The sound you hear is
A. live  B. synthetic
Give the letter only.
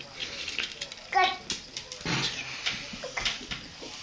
A